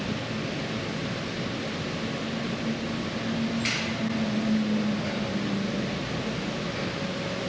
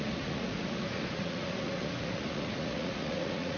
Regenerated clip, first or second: second